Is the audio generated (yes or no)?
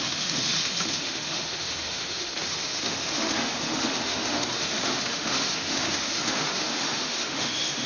yes